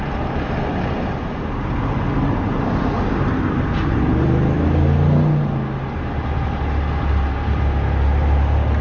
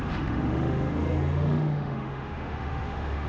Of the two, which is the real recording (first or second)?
first